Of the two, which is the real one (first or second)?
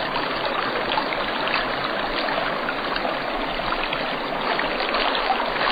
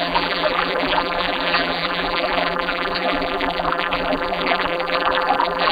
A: first